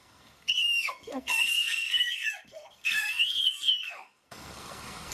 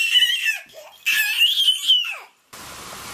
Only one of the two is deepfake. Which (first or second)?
first